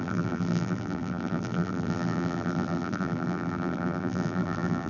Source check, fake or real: fake